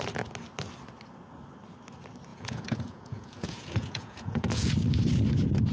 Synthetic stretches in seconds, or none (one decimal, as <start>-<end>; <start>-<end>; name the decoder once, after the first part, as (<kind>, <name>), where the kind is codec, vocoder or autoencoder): 2.3-4.7 (vocoder, Vocos)